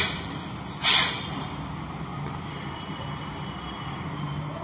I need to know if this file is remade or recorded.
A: recorded